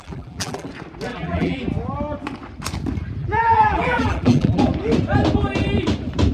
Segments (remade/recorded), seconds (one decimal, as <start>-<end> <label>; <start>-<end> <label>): 0.0-0.7 remade; 0.7-1.1 recorded; 1.1-1.6 remade; 1.6-3.2 recorded; 3.2-4.6 remade; 4.6-6.3 recorded